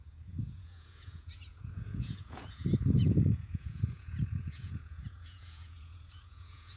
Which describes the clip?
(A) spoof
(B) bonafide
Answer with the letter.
A